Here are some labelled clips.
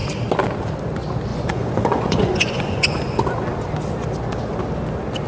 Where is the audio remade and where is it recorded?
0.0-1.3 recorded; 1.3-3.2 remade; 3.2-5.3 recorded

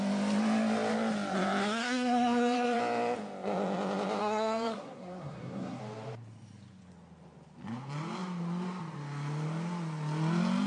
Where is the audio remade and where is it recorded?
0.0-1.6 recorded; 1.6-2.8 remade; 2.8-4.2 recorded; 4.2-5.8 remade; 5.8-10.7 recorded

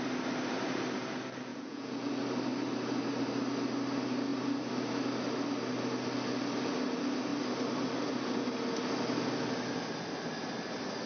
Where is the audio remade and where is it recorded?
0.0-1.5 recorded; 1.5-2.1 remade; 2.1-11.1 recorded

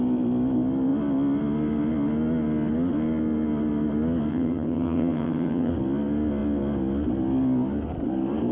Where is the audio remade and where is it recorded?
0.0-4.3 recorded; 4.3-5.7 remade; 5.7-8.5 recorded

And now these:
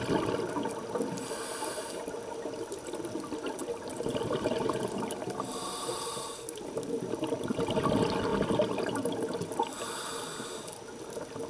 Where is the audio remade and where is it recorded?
0.0-3.6 recorded; 3.6-7.0 remade; 7.0-8.3 recorded; 8.3-9.6 remade; 9.6-11.5 recorded